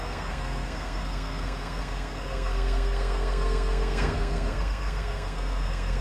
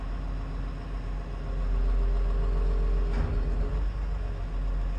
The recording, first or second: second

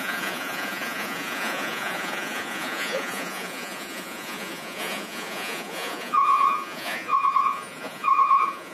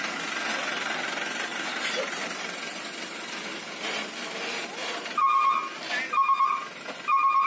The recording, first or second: second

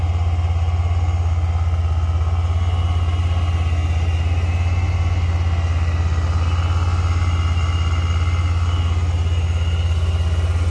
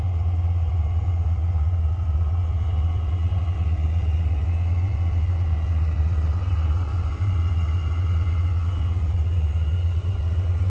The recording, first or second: first